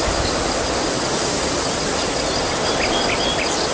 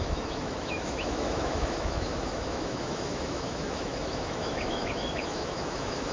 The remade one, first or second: second